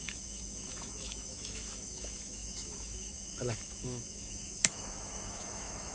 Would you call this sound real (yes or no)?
no